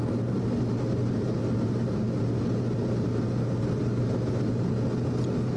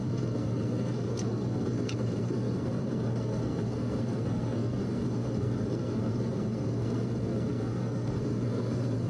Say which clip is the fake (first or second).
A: second